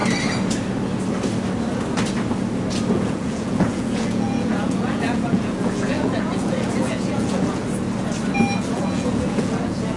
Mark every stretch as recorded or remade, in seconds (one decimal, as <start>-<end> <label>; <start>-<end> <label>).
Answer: 0.0-2.9 recorded; 2.9-7.6 remade; 7.6-8.7 recorded; 8.7-10.0 remade